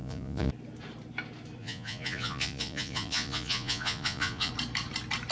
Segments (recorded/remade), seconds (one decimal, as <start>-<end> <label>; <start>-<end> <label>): 0.0-0.5 remade; 0.5-1.6 recorded; 1.6-4.5 remade; 4.5-5.3 recorded